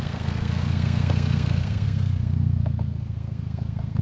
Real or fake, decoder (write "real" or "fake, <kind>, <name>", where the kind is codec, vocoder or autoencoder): fake, codec, SNAC